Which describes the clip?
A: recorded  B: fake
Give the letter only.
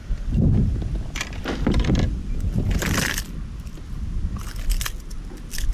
A